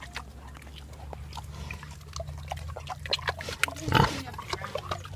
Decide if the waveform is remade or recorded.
recorded